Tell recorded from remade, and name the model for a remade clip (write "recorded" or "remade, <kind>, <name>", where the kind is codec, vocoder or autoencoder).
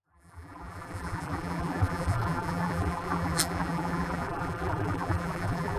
remade, vocoder, BigVGAN v2